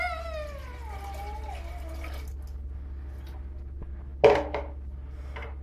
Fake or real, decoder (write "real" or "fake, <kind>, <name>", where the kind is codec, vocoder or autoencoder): real